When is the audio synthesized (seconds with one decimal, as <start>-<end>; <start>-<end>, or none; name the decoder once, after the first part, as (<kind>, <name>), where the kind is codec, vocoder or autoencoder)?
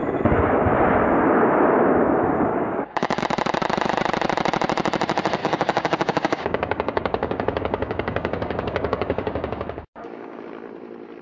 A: 2.5-3.2 (codec, DAC); 5.4-10.4